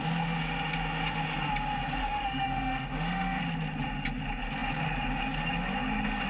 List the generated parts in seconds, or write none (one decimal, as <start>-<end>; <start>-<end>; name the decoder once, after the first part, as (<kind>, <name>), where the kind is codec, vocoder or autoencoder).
2.0-3.4 (autoencoder, DAC-VAE)